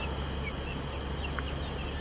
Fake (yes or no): no